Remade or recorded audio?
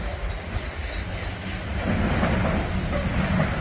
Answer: recorded